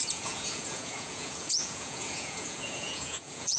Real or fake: fake